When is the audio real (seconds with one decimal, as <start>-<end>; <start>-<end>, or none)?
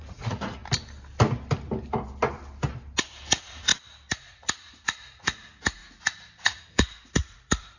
0.6-3.3; 3.7-4.2; 5.8-6.6